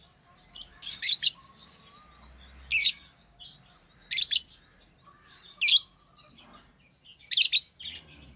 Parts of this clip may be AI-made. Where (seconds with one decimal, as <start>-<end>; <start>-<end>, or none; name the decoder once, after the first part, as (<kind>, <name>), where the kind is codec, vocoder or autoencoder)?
0.7-1.8 (codec, DAC); 2.8-3.4